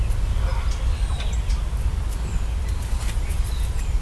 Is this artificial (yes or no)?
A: no